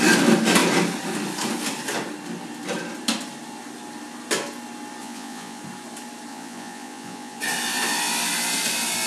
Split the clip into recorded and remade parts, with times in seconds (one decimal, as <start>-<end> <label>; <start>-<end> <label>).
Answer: 0.0-5.0 recorded; 5.0-5.6 remade; 5.6-6.3 recorded; 6.3-7.4 remade; 7.4-9.1 recorded